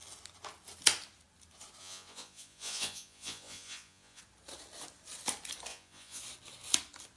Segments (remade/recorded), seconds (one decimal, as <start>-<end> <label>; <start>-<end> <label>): 0.0-1.8 recorded; 1.8-4.2 remade; 4.2-5.7 recorded; 5.7-6.2 remade; 6.2-7.2 recorded